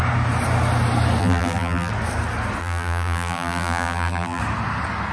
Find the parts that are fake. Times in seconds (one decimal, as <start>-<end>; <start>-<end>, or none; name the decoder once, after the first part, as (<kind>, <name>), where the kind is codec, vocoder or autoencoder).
1.2-1.9 (vocoder, BigVGAN v2); 2.6-4.4